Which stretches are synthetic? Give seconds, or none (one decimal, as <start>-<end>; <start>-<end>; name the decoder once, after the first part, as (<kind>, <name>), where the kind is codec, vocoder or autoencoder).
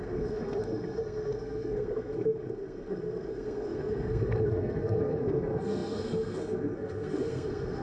0.0-7.8 (codec, SNAC)